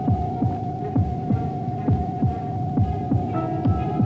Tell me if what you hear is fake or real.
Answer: real